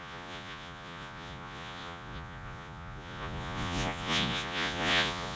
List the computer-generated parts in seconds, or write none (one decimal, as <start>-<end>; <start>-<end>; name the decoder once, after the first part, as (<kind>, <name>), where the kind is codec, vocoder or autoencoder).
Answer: 0.0-5.4 (vocoder, Vocos)